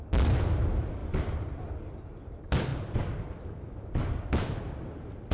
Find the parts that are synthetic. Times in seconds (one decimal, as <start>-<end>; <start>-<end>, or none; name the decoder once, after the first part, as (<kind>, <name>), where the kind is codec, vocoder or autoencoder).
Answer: 1.0-1.8 (vocoder, BigVGAN v2); 2.7-5.3